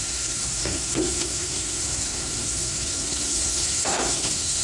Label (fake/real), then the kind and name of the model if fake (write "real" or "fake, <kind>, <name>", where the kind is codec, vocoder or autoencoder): fake, codec, SNAC